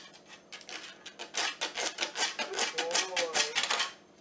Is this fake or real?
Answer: real